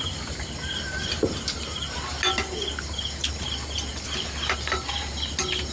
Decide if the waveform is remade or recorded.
recorded